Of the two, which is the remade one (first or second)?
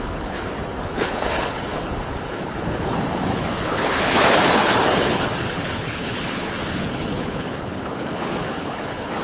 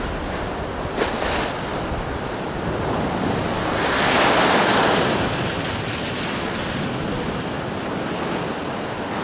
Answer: first